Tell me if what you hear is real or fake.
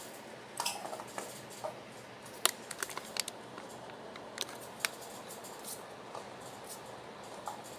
real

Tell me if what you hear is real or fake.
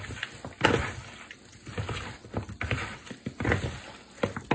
real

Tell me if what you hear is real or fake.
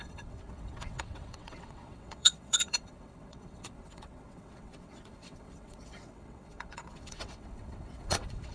fake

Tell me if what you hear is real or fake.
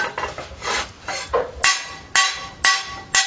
real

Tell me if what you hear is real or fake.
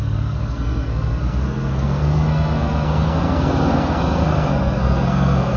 fake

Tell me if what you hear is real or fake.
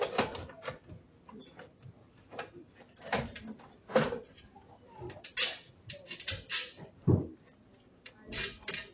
real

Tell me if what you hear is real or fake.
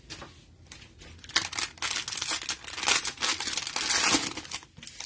real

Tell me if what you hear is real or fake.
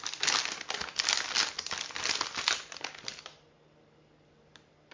real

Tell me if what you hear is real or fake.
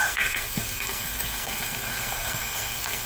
fake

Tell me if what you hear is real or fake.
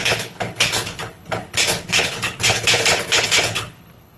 fake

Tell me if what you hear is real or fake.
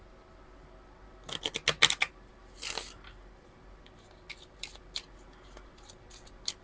real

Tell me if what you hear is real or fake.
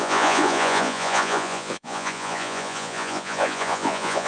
fake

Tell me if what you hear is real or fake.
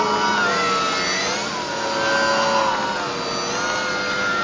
real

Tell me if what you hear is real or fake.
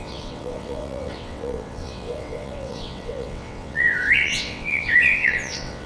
fake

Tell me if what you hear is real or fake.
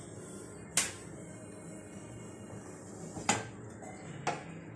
real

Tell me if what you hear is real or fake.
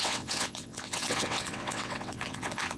fake